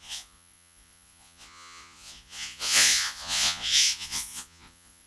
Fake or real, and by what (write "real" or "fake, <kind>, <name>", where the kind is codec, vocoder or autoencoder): fake, vocoder, Vocos